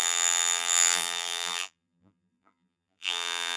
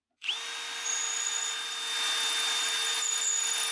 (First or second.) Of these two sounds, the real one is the second